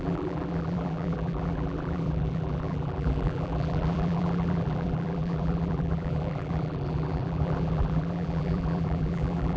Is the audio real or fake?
fake